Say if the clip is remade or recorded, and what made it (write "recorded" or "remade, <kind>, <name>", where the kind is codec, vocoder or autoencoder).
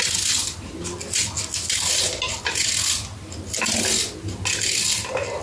recorded